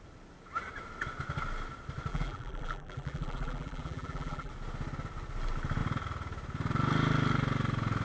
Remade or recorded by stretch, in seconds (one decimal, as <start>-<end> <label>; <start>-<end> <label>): 0.0-2.1 recorded; 2.1-4.5 remade; 4.5-8.0 recorded